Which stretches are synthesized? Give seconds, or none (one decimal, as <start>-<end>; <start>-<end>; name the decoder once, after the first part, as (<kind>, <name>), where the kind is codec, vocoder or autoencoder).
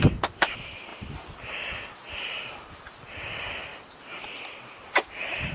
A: none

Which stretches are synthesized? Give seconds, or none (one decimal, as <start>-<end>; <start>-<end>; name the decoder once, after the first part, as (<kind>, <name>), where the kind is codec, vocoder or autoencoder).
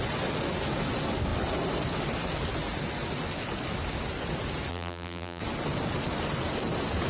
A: 4.7-5.4 (vocoder, BigVGAN v2)